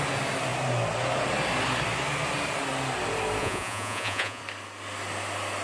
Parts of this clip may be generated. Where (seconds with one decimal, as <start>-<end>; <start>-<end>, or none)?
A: 3.4-4.4